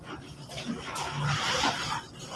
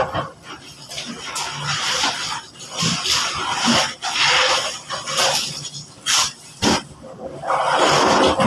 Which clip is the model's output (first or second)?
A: second